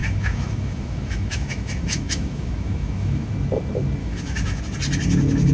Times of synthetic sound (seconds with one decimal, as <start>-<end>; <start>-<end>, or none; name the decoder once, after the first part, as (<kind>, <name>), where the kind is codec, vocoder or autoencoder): 0.0-3.3 (autoencoder, DAC-VAE); 4.0-4.6